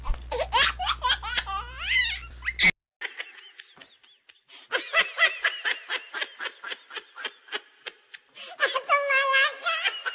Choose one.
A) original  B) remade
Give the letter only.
A